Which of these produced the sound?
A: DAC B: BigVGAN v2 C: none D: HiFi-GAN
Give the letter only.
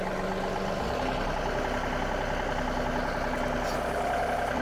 C